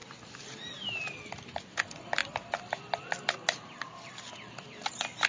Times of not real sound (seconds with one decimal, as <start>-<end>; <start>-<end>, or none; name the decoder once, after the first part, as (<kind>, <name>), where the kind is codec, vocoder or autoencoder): none